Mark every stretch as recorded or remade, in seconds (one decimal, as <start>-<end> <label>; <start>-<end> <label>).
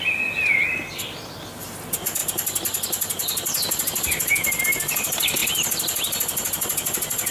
0.0-7.3 recorded